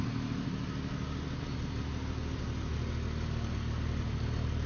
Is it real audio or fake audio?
real